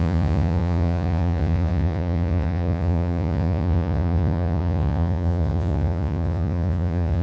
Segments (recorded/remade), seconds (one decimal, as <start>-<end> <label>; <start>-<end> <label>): 0.0-7.2 remade